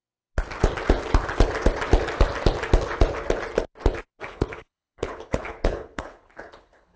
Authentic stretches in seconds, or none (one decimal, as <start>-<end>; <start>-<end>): 0.0-4.2